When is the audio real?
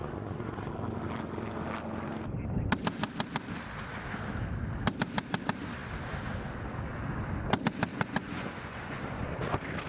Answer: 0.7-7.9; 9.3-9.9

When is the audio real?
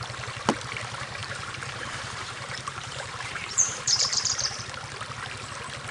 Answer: 0.0-1.2; 4.7-5.9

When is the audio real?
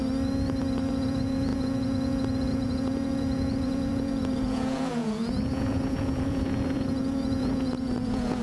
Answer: 0.0-0.9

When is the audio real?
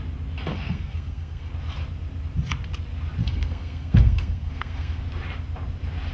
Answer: 0.0-0.5; 1.5-3.2; 5.0-6.1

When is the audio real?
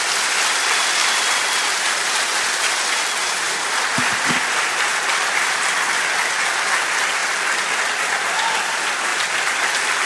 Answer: 0.0-4.9; 5.7-9.1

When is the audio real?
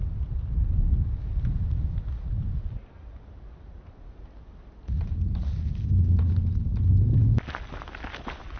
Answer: 0.0-8.6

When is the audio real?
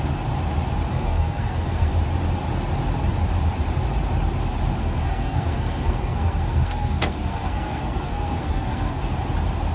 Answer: 0.0-0.9; 1.9-4.8; 9.0-9.7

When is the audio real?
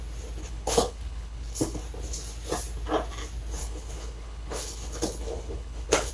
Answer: 0.0-0.4; 1.8-3.6